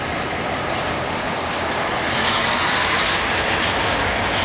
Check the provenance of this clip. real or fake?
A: real